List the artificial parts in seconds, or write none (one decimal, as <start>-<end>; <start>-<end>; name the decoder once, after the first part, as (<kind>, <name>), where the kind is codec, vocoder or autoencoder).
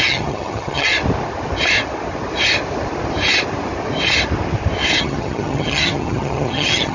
0.0-0.9 (vocoder, HiFi-GAN); 5.0-6.9